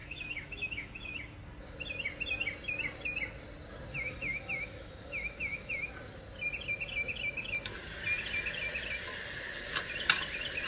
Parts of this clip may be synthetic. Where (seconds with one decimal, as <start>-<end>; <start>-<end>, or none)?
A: 0.0-1.2; 3.9-5.9